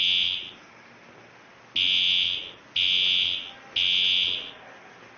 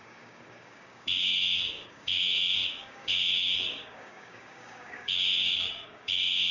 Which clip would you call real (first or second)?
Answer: first